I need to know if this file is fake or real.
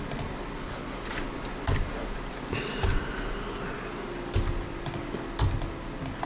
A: real